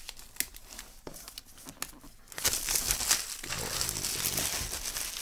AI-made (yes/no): no